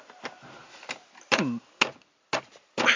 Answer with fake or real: real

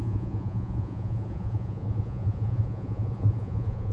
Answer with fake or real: fake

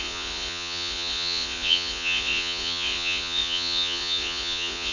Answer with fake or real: fake